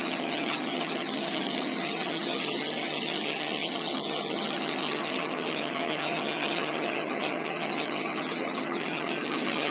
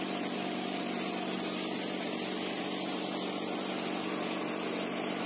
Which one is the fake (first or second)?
first